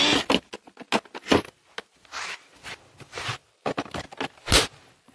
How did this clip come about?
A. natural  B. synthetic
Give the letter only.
A